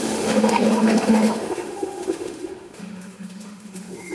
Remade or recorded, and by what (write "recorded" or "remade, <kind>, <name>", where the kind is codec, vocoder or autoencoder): remade, autoencoder, DAC-VAE